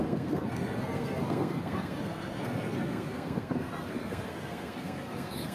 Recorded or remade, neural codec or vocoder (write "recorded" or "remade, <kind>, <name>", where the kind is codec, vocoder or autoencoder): remade, codec, SNAC